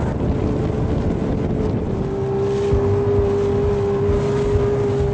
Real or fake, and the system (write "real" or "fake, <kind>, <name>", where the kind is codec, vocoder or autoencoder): real